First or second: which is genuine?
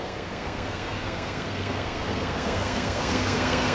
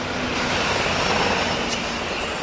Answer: second